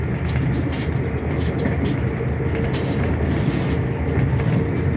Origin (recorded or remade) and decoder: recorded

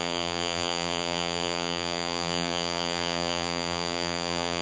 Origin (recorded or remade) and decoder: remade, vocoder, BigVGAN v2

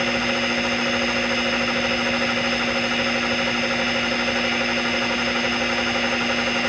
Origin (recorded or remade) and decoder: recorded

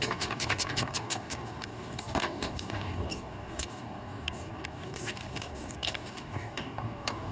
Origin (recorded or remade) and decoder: remade, codec, DAC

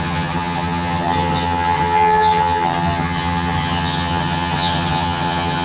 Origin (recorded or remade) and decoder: remade, vocoder, HiFi-GAN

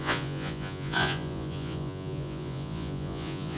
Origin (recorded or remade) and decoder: remade, vocoder, Vocos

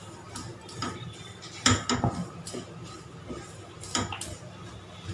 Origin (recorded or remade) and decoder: recorded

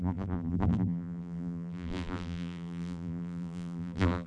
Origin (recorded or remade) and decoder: remade, vocoder, BigVGAN v2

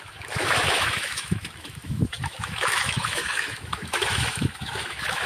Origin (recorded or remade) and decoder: remade, autoencoder, DAC-VAE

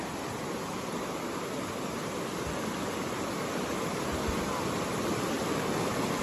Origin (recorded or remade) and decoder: recorded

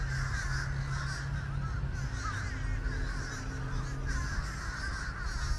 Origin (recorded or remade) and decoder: recorded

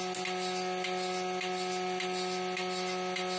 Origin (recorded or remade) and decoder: recorded